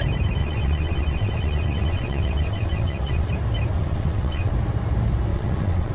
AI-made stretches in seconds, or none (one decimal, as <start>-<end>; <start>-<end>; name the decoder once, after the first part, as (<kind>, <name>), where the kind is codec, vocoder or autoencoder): 0.4-3.3 (vocoder, WaveNeXt); 3.7-4.5; 5.3-5.9